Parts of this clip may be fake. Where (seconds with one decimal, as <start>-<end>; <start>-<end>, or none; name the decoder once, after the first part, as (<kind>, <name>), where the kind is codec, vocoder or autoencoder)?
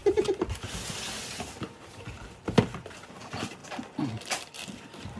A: none